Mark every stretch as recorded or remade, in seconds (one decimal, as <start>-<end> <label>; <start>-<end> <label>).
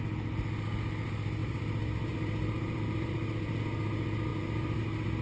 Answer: 0.0-1.4 recorded; 1.4-3.6 remade; 3.6-4.3 recorded; 4.3-4.8 remade; 4.8-5.2 recorded